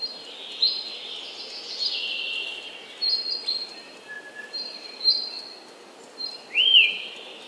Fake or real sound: real